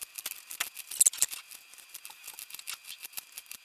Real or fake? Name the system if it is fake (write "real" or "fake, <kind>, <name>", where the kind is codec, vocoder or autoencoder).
real